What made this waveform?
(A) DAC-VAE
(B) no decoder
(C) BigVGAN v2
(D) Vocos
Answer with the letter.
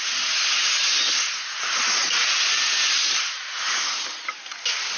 B